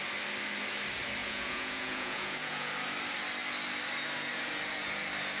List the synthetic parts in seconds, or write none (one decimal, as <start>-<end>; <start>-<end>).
1.2-2.7